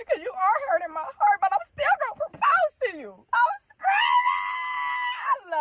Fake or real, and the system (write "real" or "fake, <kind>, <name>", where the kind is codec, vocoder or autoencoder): real